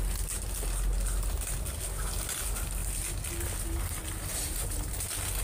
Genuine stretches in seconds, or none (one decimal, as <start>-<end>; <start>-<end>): 0.0-4.3; 4.9-5.4